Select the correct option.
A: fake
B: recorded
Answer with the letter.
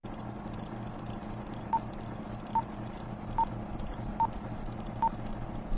B